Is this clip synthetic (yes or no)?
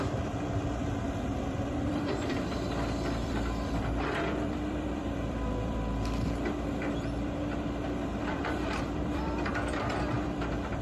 yes